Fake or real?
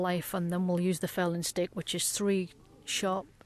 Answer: real